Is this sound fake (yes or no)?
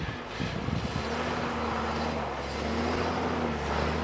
no